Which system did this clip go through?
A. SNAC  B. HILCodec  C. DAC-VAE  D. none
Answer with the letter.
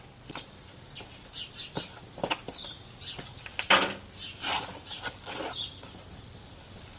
D